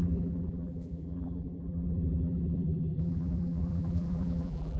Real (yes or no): no